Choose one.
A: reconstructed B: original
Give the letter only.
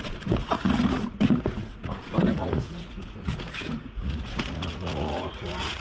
A